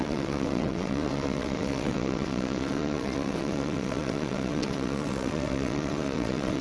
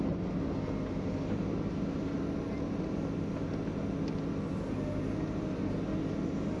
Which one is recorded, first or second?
second